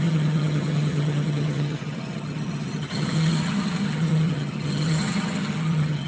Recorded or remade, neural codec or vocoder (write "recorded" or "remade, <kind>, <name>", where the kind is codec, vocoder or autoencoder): remade, vocoder, HiFi-GAN